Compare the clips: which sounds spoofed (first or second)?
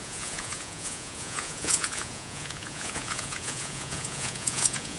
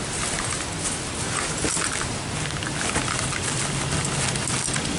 first